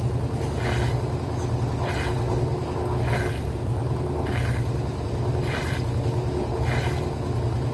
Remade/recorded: recorded